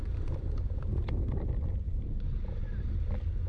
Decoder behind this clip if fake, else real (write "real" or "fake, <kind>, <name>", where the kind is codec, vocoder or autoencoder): real